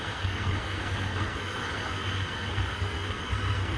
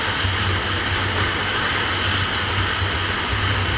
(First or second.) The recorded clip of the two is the second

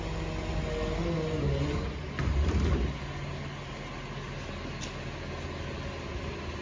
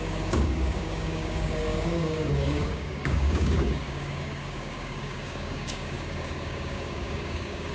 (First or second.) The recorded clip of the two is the first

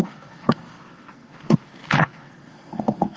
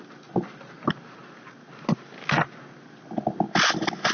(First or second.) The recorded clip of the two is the second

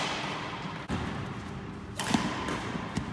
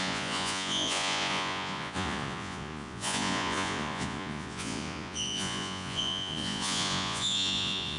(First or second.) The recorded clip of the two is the first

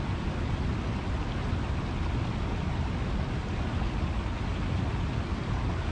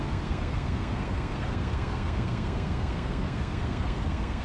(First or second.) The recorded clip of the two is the first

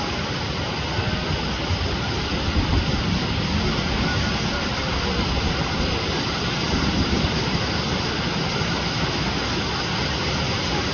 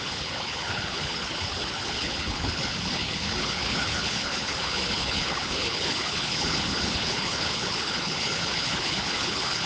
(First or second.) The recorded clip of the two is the first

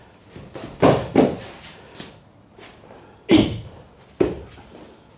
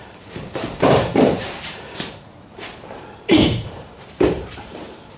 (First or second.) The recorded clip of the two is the first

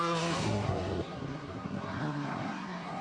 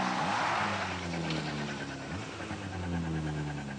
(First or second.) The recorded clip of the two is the second